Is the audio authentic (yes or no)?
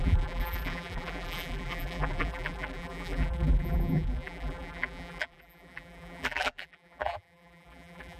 no